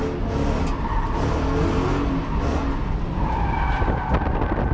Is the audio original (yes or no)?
yes